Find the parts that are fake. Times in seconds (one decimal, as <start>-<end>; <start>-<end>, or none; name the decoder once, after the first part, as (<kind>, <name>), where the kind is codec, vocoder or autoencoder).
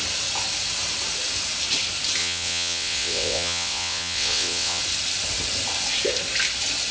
2.2-4.8 (vocoder, WaveNeXt)